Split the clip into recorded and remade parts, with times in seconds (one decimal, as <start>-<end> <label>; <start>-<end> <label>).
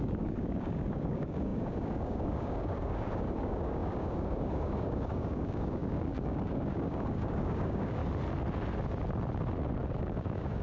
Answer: 0.0-8.0 remade; 8.0-10.0 recorded; 10.0-10.6 remade